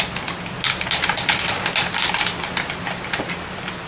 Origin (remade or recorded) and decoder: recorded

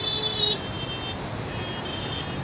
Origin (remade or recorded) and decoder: recorded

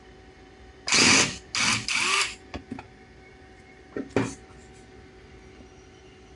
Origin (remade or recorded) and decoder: recorded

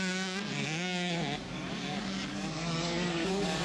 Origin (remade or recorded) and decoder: remade, codec, DAC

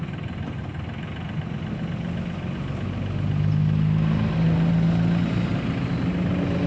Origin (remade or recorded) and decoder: recorded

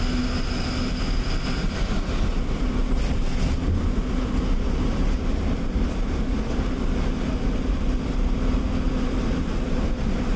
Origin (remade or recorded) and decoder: recorded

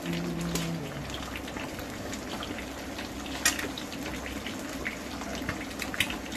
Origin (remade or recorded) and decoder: recorded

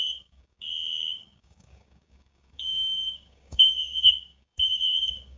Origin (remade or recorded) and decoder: remade, codec, DAC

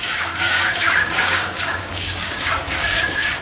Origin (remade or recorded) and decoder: remade, codec, DAC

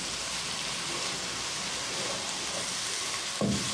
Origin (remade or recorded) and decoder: recorded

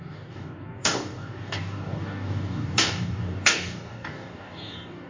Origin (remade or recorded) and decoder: remade, codec, DAC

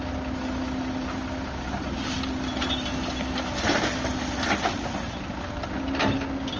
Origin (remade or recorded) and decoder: recorded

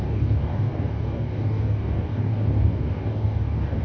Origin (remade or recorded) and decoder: remade, codec, DAC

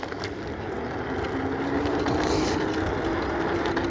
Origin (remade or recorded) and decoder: recorded